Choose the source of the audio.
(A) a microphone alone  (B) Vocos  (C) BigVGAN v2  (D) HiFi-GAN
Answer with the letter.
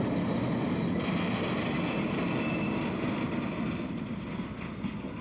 A